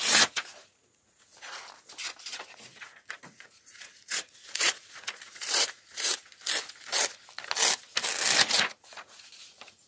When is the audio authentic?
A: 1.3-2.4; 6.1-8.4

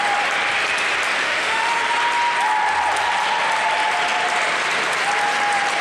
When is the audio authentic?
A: 0.0-1.2; 1.8-5.8

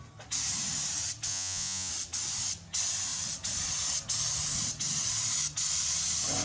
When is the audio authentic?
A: 0.0-1.3; 1.9-6.4

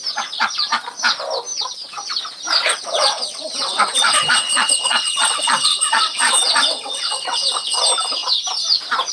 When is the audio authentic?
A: 0.0-2.7; 7.8-9.1

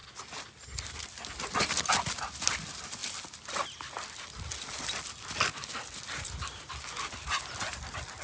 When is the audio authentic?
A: 0.0-8.2